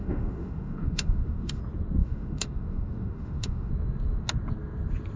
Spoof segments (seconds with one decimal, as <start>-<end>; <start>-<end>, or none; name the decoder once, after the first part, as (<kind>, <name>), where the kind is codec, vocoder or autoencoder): 0.0-1.6 (autoencoder, DAC-VAE); 2.0-3.7